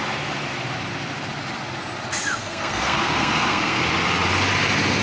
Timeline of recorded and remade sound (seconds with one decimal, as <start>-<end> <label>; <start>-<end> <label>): 0.0-2.4 recorded; 2.4-3.8 remade; 3.8-5.0 recorded